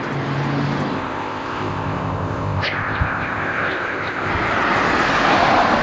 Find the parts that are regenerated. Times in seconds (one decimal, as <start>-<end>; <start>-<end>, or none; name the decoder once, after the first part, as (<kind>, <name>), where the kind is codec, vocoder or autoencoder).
0.9-4.3 (codec, ZipCodec)